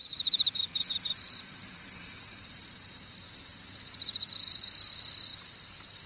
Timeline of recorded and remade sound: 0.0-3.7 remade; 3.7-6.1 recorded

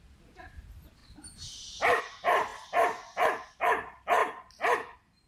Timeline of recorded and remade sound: 0.0-1.0 remade; 1.0-2.0 recorded; 2.0-2.5 remade; 2.5-3.4 recorded; 3.4-5.3 remade

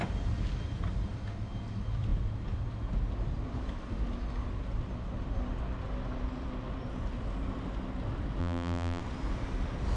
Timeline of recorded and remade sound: 0.0-8.4 recorded; 8.4-9.0 remade; 9.0-10.0 recorded

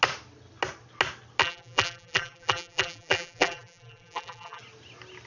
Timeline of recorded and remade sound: 0.0-1.4 recorded; 1.4-4.6 remade; 4.6-5.3 recorded

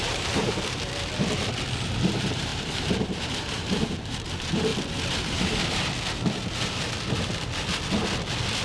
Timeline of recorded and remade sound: 0.0-0.4 remade; 0.4-2.1 recorded; 2.1-4.7 remade; 4.7-8.6 recorded

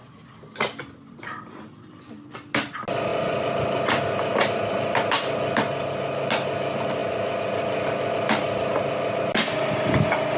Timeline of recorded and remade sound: 0.0-10.4 recorded

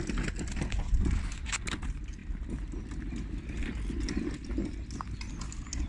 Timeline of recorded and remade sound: 0.0-5.9 recorded

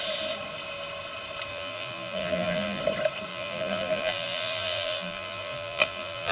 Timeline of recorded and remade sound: 0.0-1.5 recorded; 1.5-2.8 remade; 2.8-3.3 recorded; 3.3-6.3 remade